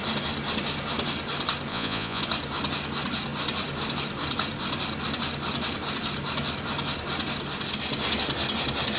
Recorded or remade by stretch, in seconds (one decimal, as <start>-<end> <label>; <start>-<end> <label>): 0.0-1.7 recorded; 1.7-2.2 remade; 2.2-9.0 recorded